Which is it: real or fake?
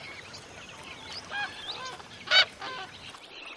real